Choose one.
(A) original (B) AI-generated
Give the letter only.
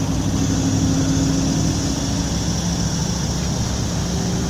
A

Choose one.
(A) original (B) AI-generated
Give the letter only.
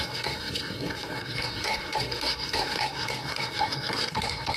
B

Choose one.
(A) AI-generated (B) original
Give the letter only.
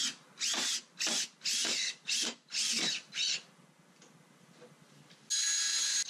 B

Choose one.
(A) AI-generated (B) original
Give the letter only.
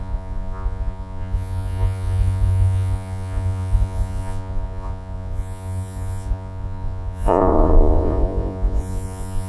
A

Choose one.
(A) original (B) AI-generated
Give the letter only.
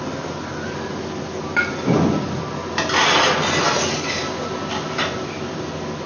A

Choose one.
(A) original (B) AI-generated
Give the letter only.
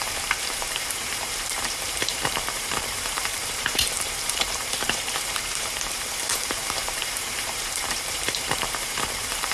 B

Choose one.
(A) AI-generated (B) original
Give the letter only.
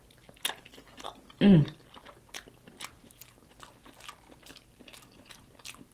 B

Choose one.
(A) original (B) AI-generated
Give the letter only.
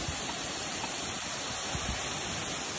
A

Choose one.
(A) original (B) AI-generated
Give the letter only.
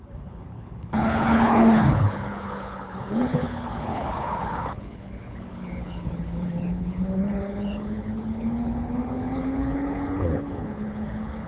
B